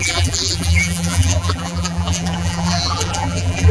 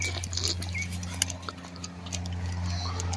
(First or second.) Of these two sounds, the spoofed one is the first